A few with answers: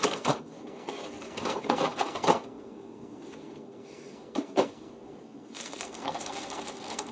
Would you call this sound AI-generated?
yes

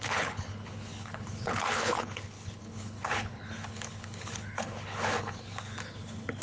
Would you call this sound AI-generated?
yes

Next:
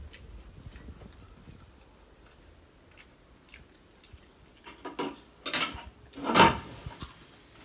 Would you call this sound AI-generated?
no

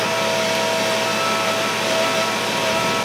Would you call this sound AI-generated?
no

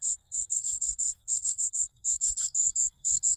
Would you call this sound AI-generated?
yes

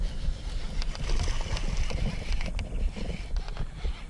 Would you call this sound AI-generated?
no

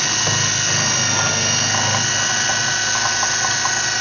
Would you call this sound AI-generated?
no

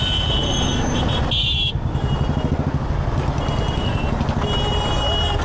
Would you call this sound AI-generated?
no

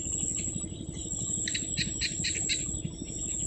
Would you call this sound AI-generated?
yes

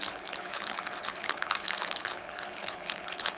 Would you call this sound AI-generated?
yes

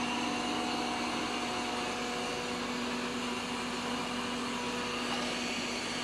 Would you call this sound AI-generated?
no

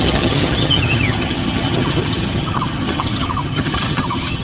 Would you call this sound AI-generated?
yes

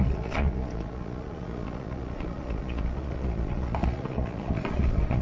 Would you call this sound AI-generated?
yes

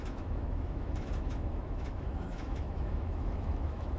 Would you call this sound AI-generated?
yes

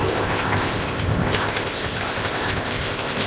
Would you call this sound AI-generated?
yes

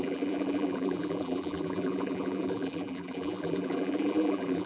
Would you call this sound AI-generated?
yes